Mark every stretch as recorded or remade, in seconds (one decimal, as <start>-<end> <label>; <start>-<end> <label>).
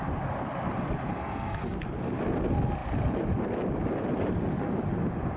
0.0-1.1 recorded; 1.1-1.8 remade; 1.8-5.4 recorded